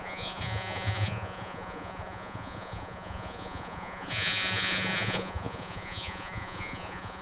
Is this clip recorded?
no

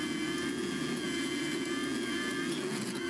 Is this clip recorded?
no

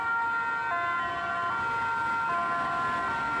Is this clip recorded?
yes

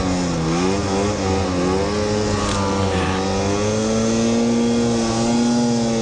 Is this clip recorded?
yes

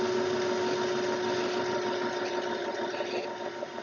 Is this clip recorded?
yes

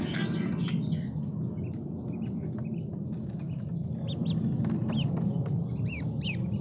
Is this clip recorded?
yes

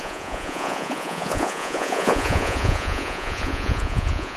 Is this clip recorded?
no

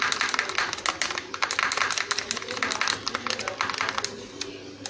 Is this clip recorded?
yes